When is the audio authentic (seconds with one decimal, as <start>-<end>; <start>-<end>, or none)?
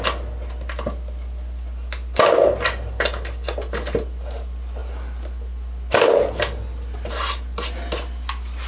0.0-8.7